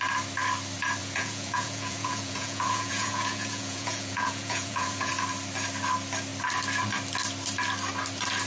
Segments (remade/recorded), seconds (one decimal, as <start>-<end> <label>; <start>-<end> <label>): 0.0-1.0 recorded; 1.0-5.1 remade; 5.1-8.5 recorded